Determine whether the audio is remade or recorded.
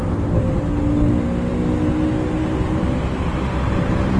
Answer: recorded